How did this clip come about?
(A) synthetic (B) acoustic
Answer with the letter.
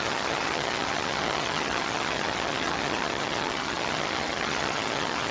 A